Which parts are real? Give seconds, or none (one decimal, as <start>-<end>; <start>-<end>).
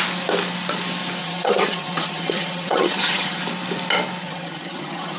0.0-1.2; 3.4-4.2